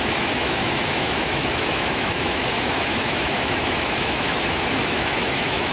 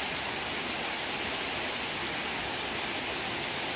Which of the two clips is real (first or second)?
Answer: second